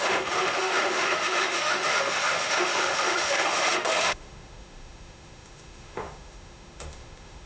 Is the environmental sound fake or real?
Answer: fake